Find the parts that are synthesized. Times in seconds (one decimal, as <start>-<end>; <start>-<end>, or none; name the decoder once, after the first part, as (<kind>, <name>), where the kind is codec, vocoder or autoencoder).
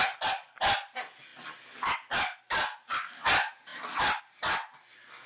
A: none